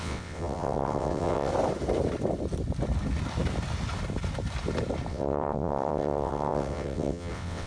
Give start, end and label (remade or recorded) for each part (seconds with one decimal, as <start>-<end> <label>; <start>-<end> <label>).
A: 0.0-1.5 remade; 1.5-5.1 recorded; 5.1-7.7 remade